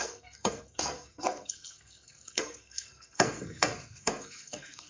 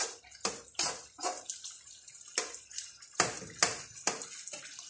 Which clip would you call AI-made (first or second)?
first